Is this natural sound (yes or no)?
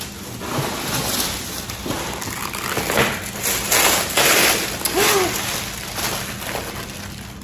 yes